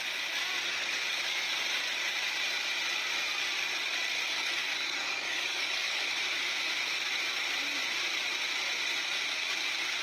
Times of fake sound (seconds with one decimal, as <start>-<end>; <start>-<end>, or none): 4.6-6.0